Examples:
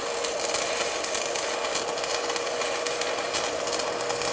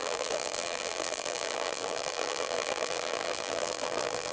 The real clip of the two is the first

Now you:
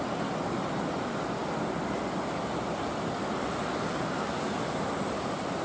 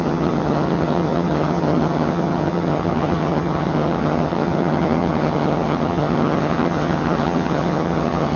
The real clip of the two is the first